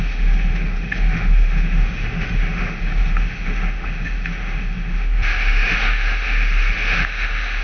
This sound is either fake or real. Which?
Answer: fake